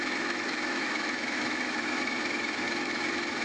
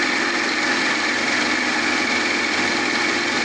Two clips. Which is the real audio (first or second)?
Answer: second